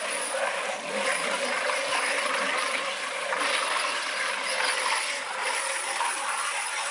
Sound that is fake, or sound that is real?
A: real